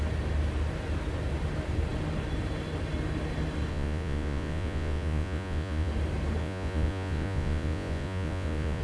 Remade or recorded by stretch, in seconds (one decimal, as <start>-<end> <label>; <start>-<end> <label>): 0.0-3.7 recorded; 3.7-5.9 remade; 5.9-6.4 recorded; 6.4-8.8 remade